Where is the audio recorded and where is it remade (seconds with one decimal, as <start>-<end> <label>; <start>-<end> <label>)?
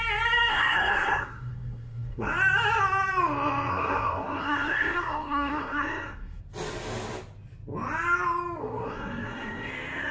0.0-0.5 recorded; 0.5-2.3 remade; 2.3-3.7 recorded; 3.7-6.4 remade; 6.4-8.6 recorded; 8.6-9.7 remade; 9.7-10.1 recorded